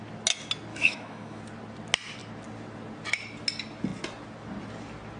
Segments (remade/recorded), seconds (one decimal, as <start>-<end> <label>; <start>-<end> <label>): 0.0-0.7 recorded; 0.7-1.4 remade; 1.4-5.2 recorded